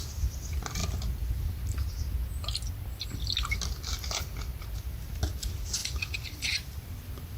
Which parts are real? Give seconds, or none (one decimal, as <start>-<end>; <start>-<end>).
0.0-7.4